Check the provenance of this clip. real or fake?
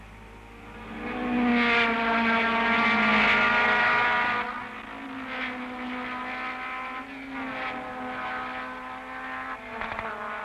real